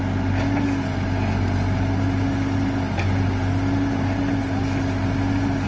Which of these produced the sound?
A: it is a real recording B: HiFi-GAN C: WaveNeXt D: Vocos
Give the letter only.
A